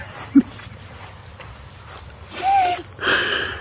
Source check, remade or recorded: recorded